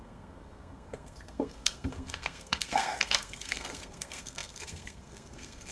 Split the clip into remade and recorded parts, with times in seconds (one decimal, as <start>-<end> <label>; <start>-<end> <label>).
0.0-5.7 remade